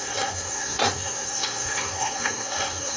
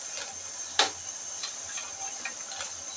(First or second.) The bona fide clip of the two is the second